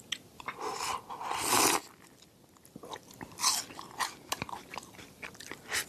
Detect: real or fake real